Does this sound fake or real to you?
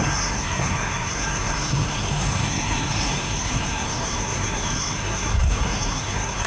fake